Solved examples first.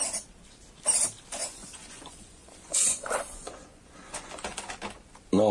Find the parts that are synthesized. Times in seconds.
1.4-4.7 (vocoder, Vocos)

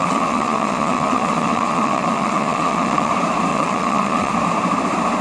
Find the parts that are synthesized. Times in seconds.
0.0-3.1 (vocoder, Vocos); 3.5-4.3